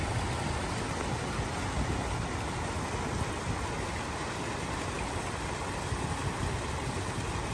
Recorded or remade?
recorded